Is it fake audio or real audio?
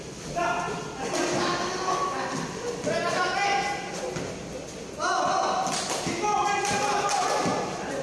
real